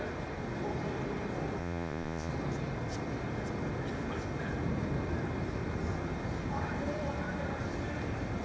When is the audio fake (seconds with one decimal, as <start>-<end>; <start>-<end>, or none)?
1.6-2.3